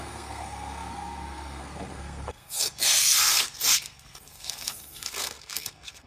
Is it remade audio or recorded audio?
remade